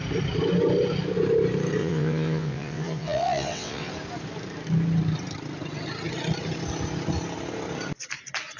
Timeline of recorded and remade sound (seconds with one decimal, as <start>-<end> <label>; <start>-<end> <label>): 0.0-1.8 recorded; 1.8-3.9 remade; 3.9-8.6 recorded